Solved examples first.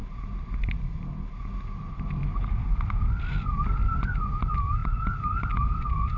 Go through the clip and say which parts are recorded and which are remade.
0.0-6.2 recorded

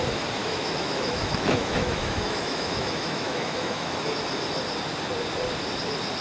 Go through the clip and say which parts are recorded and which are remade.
0.0-0.4 recorded; 0.4-4.1 remade; 4.1-6.2 recorded

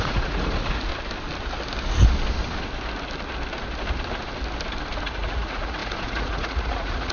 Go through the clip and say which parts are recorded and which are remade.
0.0-0.9 remade; 0.9-5.0 recorded; 5.0-7.1 remade

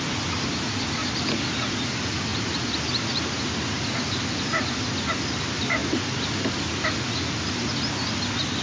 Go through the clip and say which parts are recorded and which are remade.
0.0-2.3 recorded; 2.3-3.4 remade; 3.4-8.6 recorded